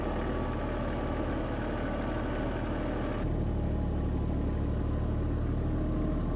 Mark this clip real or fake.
real